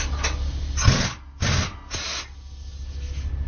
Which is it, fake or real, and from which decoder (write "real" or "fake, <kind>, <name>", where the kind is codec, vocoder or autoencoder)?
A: real